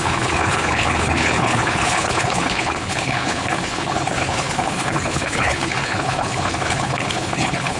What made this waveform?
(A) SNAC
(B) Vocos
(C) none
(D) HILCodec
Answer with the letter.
D